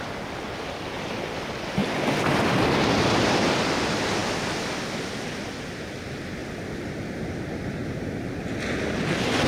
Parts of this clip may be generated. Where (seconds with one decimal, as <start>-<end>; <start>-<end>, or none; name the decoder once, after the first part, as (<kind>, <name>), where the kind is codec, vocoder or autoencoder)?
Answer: none